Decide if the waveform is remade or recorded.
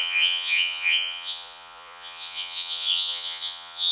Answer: remade